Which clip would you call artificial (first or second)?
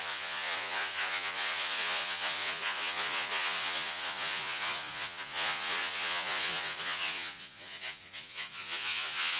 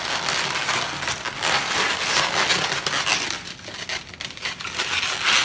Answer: first